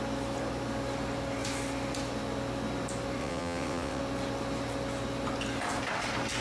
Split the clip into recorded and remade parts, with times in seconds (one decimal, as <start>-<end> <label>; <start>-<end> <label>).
0.0-3.2 recorded; 3.2-4.0 remade; 4.0-6.4 recorded

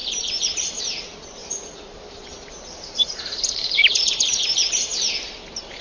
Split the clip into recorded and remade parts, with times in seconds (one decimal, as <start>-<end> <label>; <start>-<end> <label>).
0.0-0.8 remade; 0.8-1.4 recorded; 1.4-4.9 remade; 4.9-5.8 recorded

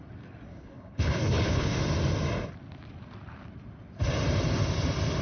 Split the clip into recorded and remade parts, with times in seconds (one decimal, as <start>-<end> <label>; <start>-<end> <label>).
0.0-0.5 recorded; 0.5-1.8 remade; 1.8-5.2 recorded

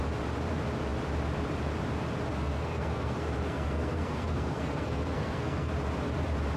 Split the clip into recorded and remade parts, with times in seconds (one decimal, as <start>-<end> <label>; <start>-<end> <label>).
0.0-2.3 recorded; 2.3-5.7 remade; 5.7-6.6 recorded

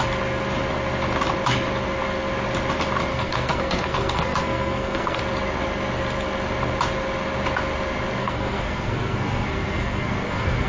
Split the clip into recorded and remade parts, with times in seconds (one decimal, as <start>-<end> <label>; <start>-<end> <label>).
0.0-3.1 recorded; 3.1-5.2 remade; 5.2-8.2 recorded; 8.2-10.7 remade

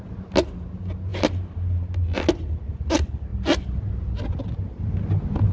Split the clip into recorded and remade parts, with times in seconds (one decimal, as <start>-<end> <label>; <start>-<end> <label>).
0.0-5.5 recorded

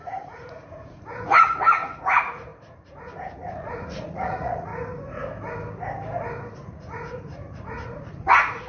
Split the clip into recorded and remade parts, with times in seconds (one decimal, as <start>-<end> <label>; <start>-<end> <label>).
0.0-4.7 remade; 4.7-6.6 recorded; 6.6-8.7 remade